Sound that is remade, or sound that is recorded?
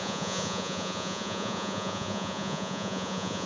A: remade